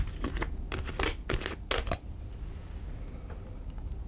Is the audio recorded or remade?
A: recorded